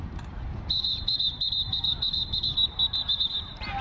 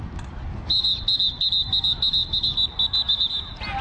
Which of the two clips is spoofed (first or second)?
first